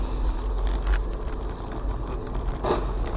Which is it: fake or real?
real